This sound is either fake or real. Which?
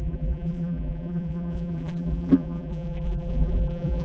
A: fake